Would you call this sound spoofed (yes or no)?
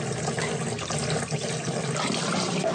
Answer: no